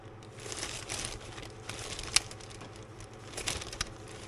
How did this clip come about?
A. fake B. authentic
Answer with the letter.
B